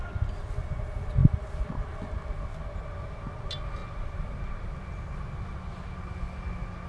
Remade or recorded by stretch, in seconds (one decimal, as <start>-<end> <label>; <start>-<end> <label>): 0.0-6.9 recorded